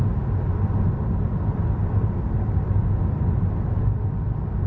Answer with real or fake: real